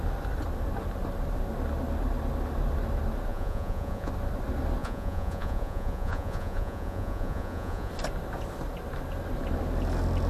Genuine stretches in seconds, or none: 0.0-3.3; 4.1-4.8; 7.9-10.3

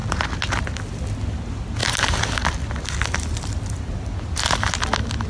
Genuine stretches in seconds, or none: 0.0-5.3